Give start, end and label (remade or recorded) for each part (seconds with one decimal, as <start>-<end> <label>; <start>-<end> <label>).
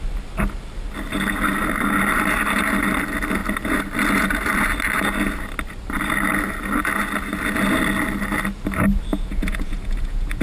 0.0-9.1 recorded; 9.1-10.4 remade